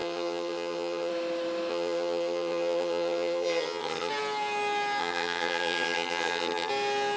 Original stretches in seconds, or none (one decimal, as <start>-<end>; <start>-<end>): 1.1-1.7; 4.1-5.0; 6.7-7.2